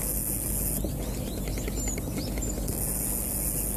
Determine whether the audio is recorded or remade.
recorded